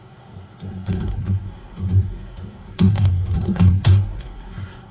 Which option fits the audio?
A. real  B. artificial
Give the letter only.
B